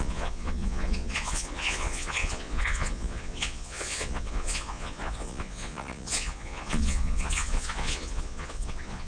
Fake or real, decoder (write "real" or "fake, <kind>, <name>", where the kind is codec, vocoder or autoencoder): fake, vocoder, Vocos